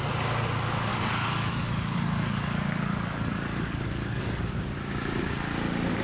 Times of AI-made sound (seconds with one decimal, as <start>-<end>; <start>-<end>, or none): 0.9-4.5